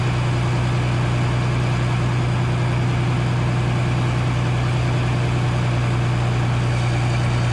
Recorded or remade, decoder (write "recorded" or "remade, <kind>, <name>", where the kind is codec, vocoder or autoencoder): recorded